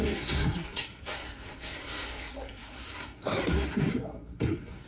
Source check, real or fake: fake